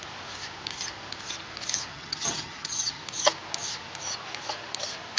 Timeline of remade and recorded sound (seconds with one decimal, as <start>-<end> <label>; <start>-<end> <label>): 0.0-1.9 recorded; 1.9-3.0 remade; 3.0-5.2 recorded

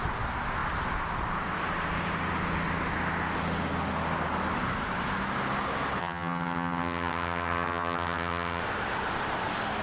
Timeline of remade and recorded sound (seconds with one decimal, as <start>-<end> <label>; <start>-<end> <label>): 0.0-6.0 recorded; 6.0-8.6 remade; 8.6-9.8 recorded

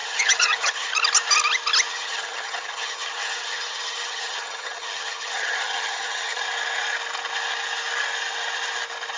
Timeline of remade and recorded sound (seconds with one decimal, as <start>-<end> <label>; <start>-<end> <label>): 0.0-0.9 remade; 0.9-1.9 recorded; 1.9-6.4 remade; 6.4-9.2 recorded

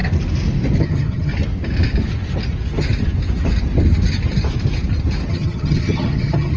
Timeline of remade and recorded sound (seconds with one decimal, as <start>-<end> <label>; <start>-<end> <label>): 0.0-0.8 recorded; 0.8-1.3 remade; 1.3-5.3 recorded; 5.3-6.6 remade

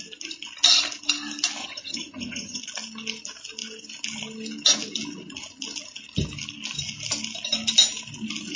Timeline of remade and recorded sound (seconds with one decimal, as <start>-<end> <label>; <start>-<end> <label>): 0.0-1.6 recorded; 1.6-2.6 remade; 2.6-8.6 recorded

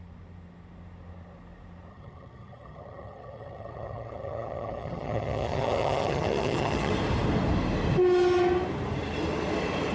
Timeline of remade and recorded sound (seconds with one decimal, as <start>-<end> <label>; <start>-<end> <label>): 0.0-1.9 recorded; 1.9-6.9 remade; 6.9-9.9 recorded

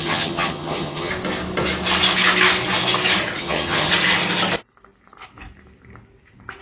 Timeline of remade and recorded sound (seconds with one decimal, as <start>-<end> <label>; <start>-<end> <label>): 0.0-1.1 remade; 1.1-3.4 recorded; 3.4-3.9 remade; 3.9-6.6 recorded

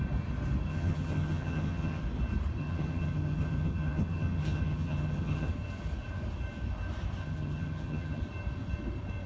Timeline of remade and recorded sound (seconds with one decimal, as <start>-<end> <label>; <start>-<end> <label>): 0.0-0.7 recorded; 0.7-2.0 remade; 2.0-2.6 recorded; 2.6-5.5 remade; 5.5-7.2 recorded; 7.2-8.2 remade; 8.2-9.3 recorded